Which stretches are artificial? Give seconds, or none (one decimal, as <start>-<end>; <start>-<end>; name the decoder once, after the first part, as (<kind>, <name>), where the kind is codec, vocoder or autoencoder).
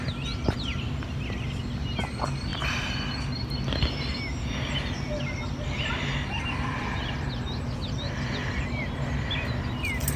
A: none